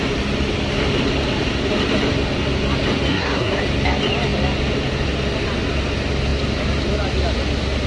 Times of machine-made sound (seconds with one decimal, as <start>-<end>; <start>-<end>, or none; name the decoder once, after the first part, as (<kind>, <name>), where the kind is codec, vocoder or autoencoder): 3.1-3.6 (codec, SNAC)